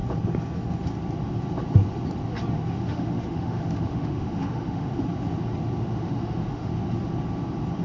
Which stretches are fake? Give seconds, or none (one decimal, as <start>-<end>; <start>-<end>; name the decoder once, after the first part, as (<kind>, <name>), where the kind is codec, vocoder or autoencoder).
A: 2.7-4.9 (autoencoder, DAC-VAE); 5.8-6.7